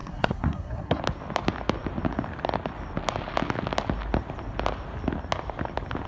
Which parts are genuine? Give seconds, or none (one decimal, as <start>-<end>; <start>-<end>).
1.0-6.1